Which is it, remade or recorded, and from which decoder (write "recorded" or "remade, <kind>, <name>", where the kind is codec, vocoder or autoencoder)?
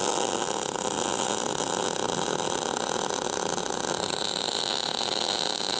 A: recorded